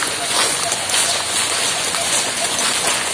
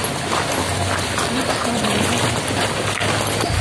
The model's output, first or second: first